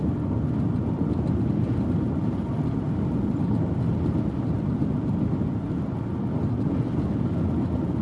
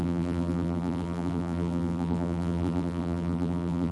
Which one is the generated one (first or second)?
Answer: second